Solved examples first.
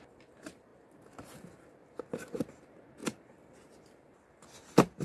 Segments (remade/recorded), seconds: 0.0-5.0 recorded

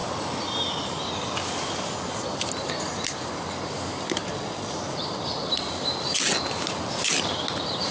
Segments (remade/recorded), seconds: 0.0-4.2 recorded; 4.2-4.7 remade; 4.7-7.9 recorded

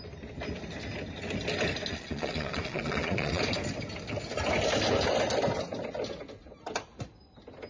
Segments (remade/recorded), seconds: 0.0-1.9 recorded; 1.9-3.4 remade; 3.4-7.7 recorded

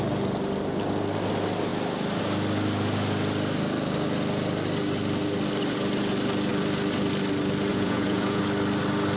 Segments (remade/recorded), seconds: 0.0-7.7 recorded; 7.7-8.4 remade; 8.4-9.2 recorded

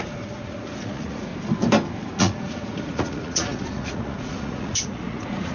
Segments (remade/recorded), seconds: 0.0-1.3 remade; 1.3-2.2 recorded; 2.2-5.5 remade

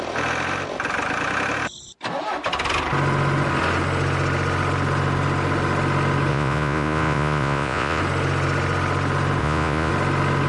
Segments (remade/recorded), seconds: 0.0-6.3 recorded; 6.3-8.0 remade; 8.0-9.4 recorded; 9.4-9.9 remade; 9.9-10.5 recorded